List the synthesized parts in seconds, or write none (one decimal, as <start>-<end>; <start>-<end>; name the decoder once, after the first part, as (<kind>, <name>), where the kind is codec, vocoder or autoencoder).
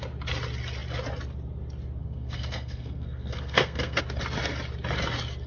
2.0-4.0 (codec, SNAC)